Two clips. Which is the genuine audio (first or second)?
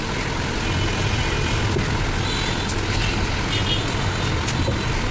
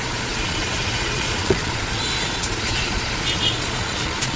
first